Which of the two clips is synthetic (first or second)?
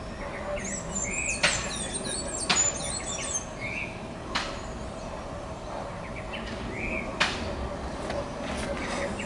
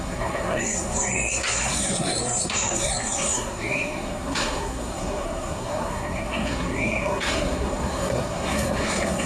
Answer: second